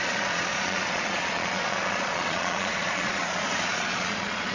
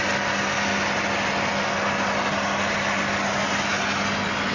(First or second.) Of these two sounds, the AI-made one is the first